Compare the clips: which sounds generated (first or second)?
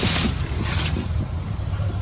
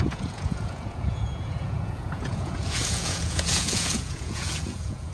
second